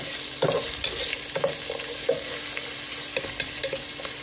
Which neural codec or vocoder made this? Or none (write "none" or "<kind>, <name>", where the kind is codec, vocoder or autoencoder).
none